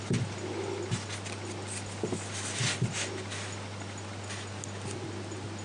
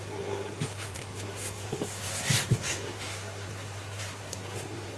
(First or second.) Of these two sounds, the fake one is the second